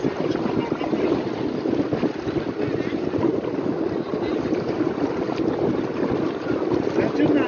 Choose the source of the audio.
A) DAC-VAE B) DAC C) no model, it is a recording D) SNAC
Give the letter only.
C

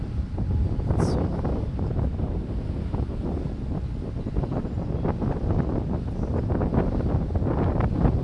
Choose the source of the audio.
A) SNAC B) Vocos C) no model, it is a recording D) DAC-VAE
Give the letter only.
C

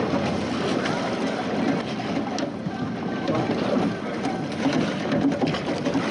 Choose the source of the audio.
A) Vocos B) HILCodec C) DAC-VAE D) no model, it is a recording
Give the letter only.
D